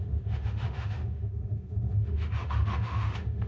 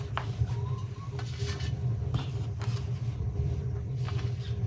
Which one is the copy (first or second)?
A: first